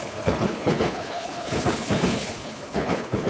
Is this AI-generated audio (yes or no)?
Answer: yes